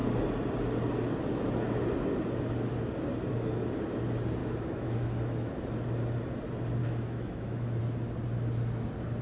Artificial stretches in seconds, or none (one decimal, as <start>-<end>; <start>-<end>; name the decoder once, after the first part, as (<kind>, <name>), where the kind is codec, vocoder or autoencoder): 4.4-5.5 (autoencoder, DAC-VAE); 6.8-7.8